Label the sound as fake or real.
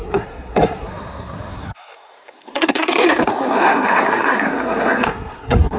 fake